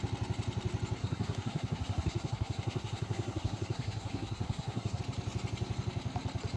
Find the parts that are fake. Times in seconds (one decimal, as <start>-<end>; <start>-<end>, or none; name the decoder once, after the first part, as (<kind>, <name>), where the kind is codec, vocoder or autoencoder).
1.0-5.0 (codec, SNAC)